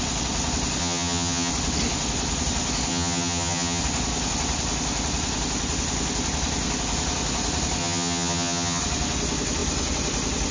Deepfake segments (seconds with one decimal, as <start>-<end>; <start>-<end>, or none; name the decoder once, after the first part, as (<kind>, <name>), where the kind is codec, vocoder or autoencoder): 0.8-1.5 (vocoder, HiFi-GAN); 2.9-3.8; 7.8-8.8